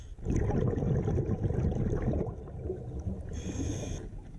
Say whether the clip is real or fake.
real